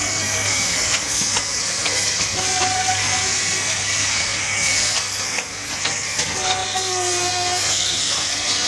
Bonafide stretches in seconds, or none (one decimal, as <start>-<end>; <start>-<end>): none